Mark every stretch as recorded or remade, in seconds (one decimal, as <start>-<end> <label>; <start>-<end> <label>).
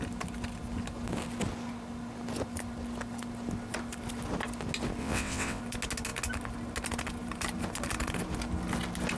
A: 0.0-5.0 recorded; 5.0-5.6 remade; 5.6-9.2 recorded